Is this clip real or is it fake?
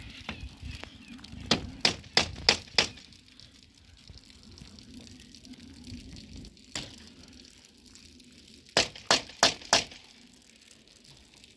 real